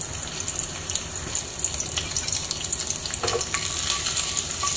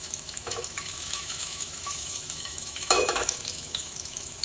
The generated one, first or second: second